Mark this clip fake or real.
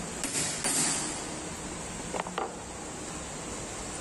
real